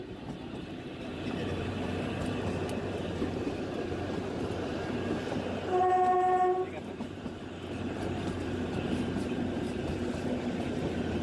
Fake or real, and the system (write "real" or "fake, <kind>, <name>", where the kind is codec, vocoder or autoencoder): fake, vocoder, BigVGAN v2